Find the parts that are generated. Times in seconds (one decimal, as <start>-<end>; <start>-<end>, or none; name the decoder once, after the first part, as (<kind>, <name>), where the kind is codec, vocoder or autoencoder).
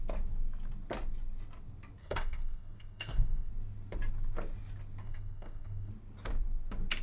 2.0-3.5 (codec, SNAC); 5.0-5.9